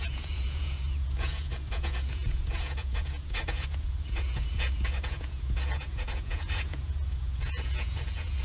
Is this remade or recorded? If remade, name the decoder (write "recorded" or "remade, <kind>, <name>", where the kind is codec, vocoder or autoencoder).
remade, vocoder, Vocos